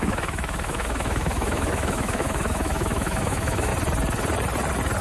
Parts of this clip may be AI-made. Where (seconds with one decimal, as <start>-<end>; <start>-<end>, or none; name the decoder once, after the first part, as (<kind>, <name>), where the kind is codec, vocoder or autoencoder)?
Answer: 0.0-3.7 (autoencoder, DAC-VAE)